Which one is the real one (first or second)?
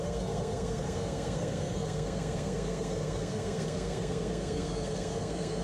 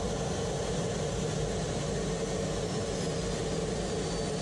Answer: second